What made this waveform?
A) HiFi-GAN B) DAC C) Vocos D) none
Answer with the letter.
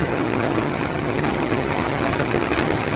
A